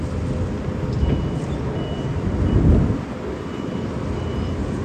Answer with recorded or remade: recorded